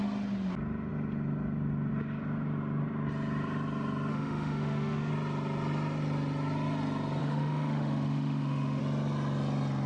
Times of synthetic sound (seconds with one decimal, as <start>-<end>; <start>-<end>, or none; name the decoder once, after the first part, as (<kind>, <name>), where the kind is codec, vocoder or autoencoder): 4.1-5.1 (autoencoder, DAC-VAE); 7.2-8.8